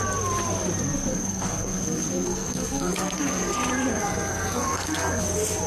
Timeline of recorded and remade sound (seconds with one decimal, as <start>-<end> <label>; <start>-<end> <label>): 0.0-1.1 recorded; 1.1-3.5 remade; 3.5-3.9 recorded; 3.9-5.2 remade; 5.2-5.7 recorded

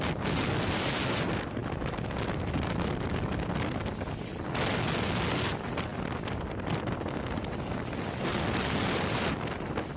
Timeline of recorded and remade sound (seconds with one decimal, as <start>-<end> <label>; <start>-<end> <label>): 0.0-10.0 recorded

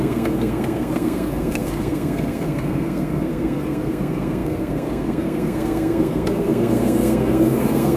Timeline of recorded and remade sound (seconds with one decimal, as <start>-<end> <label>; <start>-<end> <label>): 0.0-8.0 remade

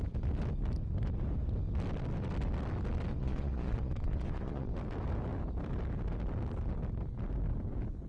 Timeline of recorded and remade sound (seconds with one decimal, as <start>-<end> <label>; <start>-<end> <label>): 0.0-3.1 recorded; 3.1-4.7 remade; 4.7-8.1 recorded